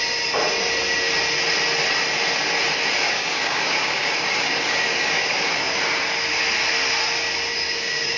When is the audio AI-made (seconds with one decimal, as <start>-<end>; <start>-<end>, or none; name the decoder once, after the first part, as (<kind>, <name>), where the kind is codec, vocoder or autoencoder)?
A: 3.0-5.7 (codec, DAC); 7.5-8.2